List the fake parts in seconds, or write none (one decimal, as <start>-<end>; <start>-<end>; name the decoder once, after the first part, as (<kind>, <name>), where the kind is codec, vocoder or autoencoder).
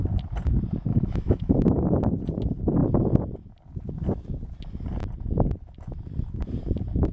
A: 0.9-1.5 (autoencoder, DAC-VAE)